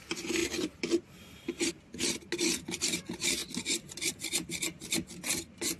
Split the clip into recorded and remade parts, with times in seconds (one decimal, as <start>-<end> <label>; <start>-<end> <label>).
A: 0.0-0.4 recorded; 0.4-1.7 remade; 1.7-3.4 recorded; 3.4-4.1 remade; 4.1-5.8 recorded